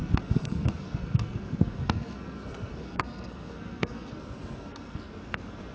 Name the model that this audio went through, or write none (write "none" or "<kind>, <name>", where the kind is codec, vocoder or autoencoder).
codec, SNAC